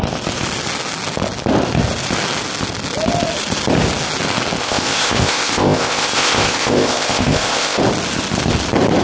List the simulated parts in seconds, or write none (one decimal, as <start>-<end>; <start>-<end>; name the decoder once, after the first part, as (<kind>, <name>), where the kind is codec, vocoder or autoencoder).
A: 4.6-7.8 (codec, ZipCodec)